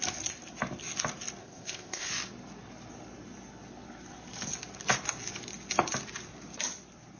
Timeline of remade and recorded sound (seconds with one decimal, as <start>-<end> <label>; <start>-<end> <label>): 0.0-1.4 recorded; 1.4-2.1 remade; 2.1-7.2 recorded